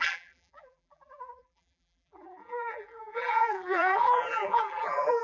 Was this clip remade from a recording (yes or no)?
yes